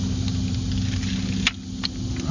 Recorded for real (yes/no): yes